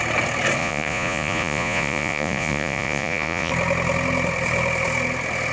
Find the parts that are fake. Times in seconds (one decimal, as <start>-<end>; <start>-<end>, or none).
0.6-3.5